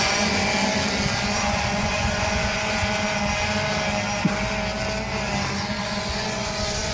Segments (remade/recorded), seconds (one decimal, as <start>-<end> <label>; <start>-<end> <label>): 0.0-0.4 remade; 0.4-1.4 recorded; 1.4-2.8 remade; 2.8-5.7 recorded; 5.7-6.9 remade